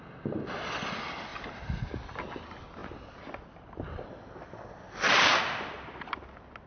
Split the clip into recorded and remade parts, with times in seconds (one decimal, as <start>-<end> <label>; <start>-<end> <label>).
0.0-6.7 recorded